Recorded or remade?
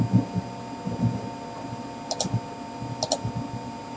recorded